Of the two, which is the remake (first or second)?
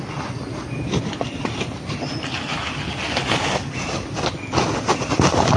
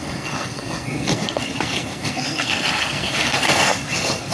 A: second